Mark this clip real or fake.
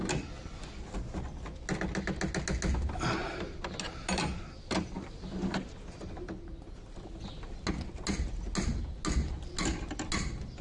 real